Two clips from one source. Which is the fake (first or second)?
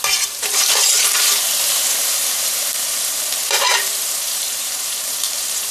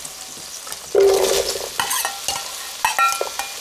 first